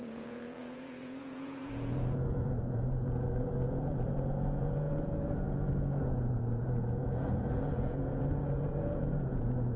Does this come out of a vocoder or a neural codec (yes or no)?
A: yes